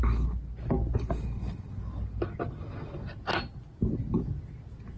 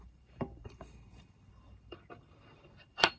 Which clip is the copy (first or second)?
second